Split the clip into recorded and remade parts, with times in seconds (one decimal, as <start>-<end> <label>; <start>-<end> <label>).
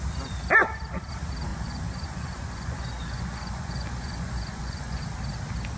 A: 0.0-1.5 recorded; 1.5-5.0 remade; 5.0-5.8 recorded